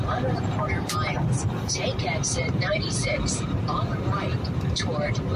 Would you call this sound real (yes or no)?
no